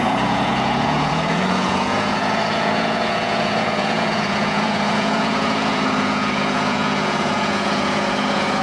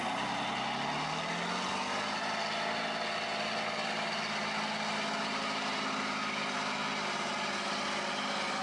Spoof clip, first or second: first